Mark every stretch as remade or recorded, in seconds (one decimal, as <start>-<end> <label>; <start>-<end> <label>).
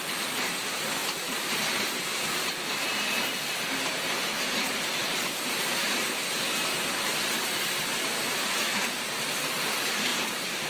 0.0-1.0 recorded; 1.0-2.6 remade; 2.6-5.0 recorded; 5.0-5.9 remade; 5.9-10.1 recorded; 10.1-10.7 remade